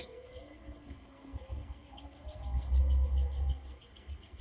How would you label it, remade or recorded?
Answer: remade